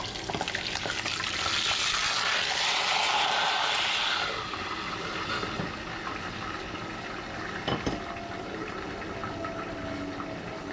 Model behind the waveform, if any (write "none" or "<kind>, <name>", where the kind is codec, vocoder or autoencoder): none